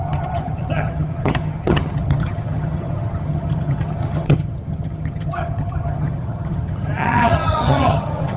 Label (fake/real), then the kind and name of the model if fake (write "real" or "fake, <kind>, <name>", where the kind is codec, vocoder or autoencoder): fake, vocoder, HiFi-GAN